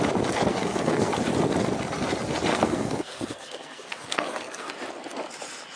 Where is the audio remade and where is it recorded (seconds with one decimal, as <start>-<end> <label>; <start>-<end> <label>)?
0.0-0.5 recorded; 0.5-1.1 remade; 1.1-2.5 recorded; 2.5-4.7 remade; 4.7-5.8 recorded